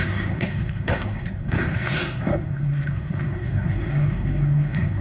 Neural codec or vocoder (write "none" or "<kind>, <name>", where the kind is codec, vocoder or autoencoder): codec, SNAC